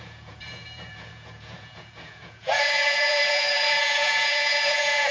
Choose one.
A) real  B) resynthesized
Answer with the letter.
B